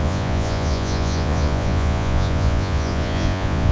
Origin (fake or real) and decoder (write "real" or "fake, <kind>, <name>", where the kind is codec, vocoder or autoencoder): fake, vocoder, Vocos